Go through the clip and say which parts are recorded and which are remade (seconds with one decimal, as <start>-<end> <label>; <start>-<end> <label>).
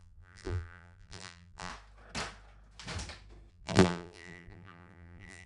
0.0-1.7 remade; 1.7-3.5 recorded; 3.5-5.5 remade